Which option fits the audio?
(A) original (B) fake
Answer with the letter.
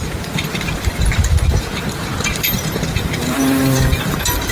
B